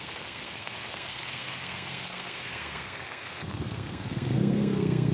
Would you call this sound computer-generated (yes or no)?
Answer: yes